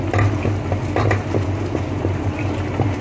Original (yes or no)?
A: yes